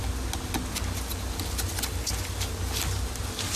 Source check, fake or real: real